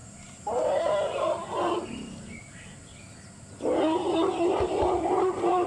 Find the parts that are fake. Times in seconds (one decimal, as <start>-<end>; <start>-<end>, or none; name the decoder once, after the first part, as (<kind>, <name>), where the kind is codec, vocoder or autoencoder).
none